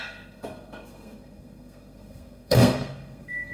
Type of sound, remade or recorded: remade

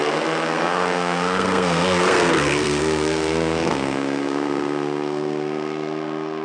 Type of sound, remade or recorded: remade